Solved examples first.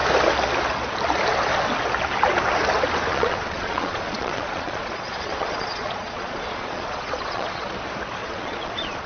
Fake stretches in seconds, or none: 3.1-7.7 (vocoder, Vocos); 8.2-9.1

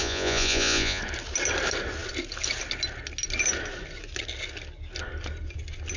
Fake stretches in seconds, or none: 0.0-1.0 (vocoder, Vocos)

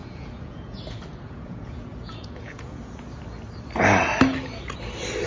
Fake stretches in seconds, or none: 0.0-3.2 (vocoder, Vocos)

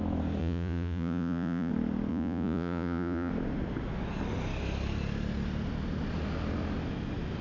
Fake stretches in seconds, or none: 0.4-1.7 (vocoder, Vocos); 2.1-3.3

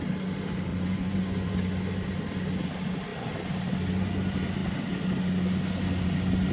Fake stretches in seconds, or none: 0.7-1.5 (vocoder, Vocos)